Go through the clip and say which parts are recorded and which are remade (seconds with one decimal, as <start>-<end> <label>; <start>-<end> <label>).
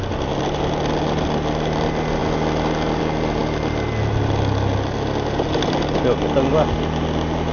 0.0-7.5 recorded